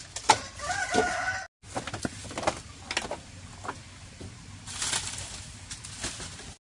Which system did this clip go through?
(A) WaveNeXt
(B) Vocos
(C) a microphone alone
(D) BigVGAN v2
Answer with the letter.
C